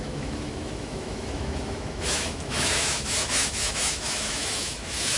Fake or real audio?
fake